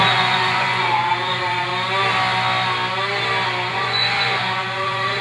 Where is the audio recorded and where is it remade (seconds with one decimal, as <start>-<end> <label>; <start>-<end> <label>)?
0.0-1.7 remade; 1.7-3.7 recorded; 3.7-5.2 remade